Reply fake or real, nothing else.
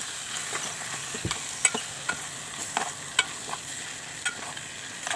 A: real